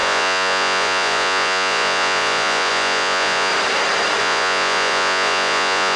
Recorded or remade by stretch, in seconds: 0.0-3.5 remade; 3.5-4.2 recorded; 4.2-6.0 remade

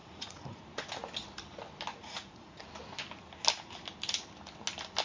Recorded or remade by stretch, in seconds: 0.0-0.6 remade; 0.6-1.9 recorded; 1.9-2.6 remade; 2.6-5.0 recorded

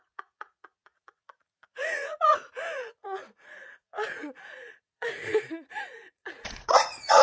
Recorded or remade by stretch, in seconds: 0.0-7.2 remade

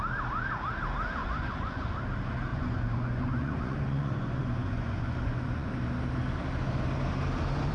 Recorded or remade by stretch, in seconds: 0.0-1.2 recorded; 1.2-1.9 remade; 1.9-2.5 recorded; 2.5-5.7 remade; 5.7-7.7 recorded

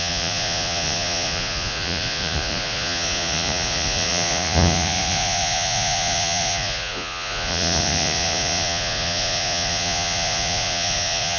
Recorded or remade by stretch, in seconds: 0.0-11.4 remade

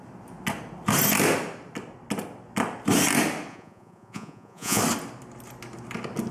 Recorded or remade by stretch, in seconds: 0.0-3.5 recorded; 3.5-4.8 remade; 4.8-6.3 recorded

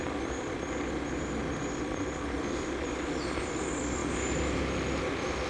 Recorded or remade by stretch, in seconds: 0.0-5.5 recorded